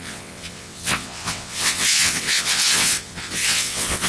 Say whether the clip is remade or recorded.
remade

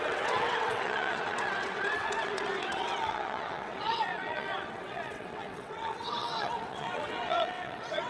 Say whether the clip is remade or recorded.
remade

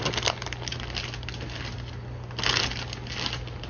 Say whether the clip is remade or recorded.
recorded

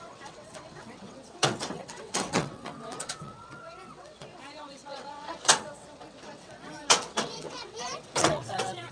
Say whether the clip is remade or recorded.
remade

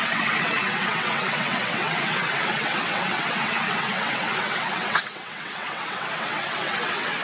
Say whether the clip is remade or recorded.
remade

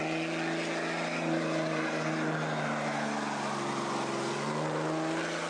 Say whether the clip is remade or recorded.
recorded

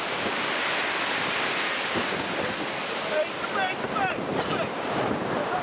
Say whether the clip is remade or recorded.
recorded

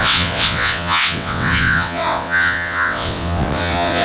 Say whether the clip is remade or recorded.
remade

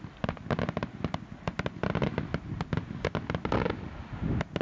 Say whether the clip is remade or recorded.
recorded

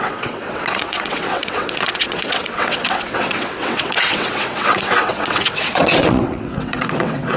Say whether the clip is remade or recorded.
remade